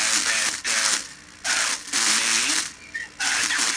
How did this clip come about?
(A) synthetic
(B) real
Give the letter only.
B